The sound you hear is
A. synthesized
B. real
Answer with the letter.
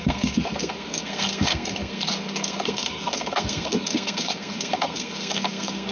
A